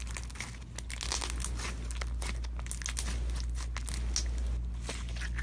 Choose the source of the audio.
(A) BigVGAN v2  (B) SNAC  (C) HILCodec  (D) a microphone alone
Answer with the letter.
D